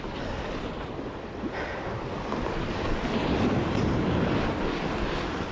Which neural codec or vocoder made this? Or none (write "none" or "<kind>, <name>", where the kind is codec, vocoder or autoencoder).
none